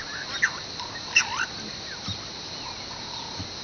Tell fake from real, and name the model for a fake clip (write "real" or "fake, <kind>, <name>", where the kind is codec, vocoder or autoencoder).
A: real